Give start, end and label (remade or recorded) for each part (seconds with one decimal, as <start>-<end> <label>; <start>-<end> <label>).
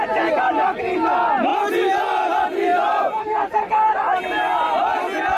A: 0.0-2.7 recorded; 2.7-4.7 remade; 4.7-5.4 recorded